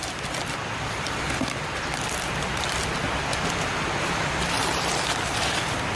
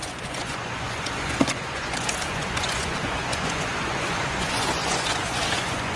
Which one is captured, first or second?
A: first